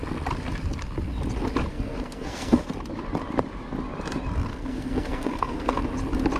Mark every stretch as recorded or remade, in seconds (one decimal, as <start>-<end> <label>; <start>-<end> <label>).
0.0-1.7 recorded; 1.7-2.7 remade; 2.7-4.5 recorded; 4.5-5.8 remade; 5.8-6.4 recorded